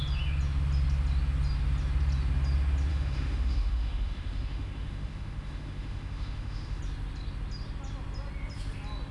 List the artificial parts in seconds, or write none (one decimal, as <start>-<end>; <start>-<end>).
2.9-6.8